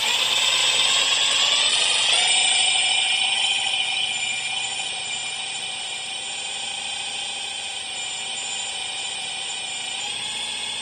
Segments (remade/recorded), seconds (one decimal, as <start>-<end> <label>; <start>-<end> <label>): 0.0-0.6 recorded; 0.6-2.1 remade; 2.1-10.8 recorded